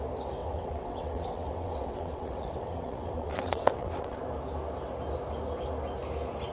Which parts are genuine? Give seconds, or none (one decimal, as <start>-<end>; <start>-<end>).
0.0-0.4; 4.2-6.5

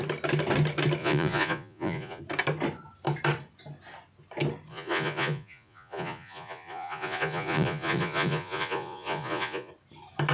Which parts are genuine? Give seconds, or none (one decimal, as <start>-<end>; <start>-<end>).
0.0-1.0; 2.2-4.7; 9.7-10.3

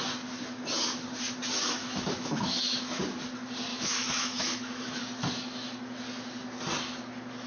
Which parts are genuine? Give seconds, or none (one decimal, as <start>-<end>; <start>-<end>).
0.0-1.8; 3.0-3.7; 5.0-7.5

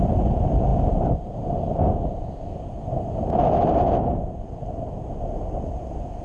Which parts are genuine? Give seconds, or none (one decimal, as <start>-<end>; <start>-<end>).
0.0-6.2